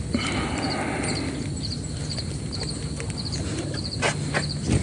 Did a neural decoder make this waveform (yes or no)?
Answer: no